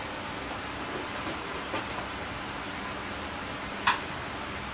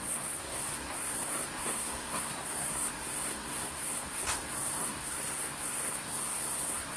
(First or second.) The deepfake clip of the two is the second